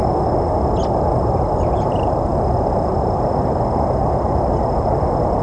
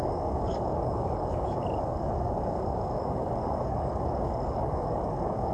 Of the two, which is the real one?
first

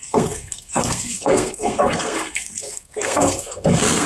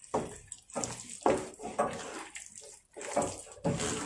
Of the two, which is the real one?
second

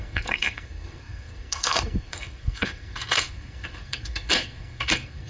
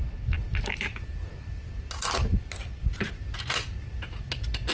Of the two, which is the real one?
second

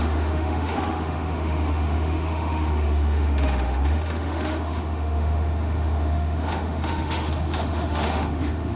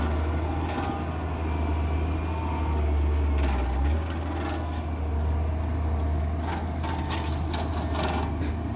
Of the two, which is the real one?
second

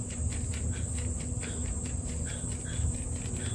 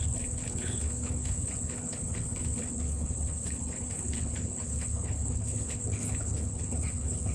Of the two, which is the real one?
first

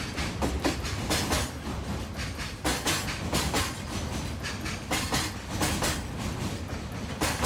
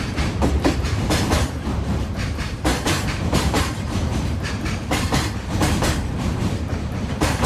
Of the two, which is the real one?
first